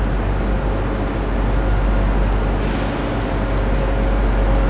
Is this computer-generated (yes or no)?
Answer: no